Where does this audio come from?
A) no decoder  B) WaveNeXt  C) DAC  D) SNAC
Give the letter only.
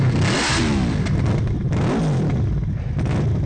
A